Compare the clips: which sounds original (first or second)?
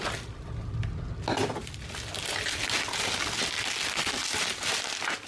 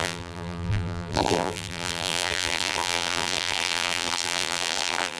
first